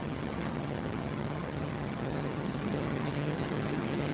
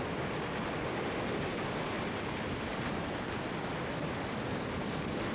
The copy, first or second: first